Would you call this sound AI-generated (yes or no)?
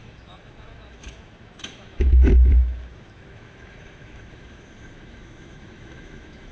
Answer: yes